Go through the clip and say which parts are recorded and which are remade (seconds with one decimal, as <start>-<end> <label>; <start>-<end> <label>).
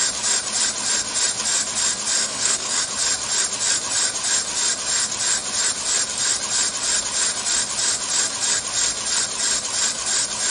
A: 0.0-2.2 recorded; 2.2-2.8 remade; 2.8-10.5 recorded